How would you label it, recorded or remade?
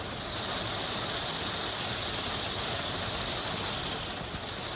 recorded